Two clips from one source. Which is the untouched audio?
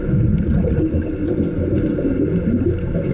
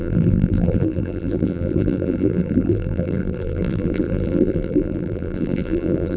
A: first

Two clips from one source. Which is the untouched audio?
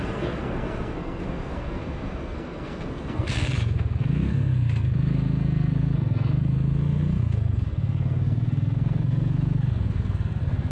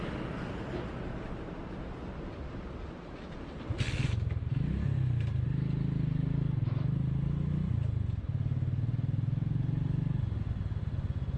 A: second